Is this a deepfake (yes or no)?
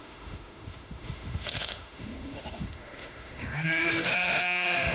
yes